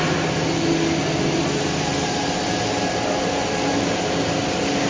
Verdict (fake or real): real